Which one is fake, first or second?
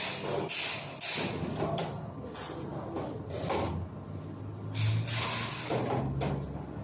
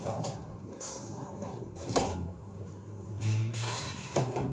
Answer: second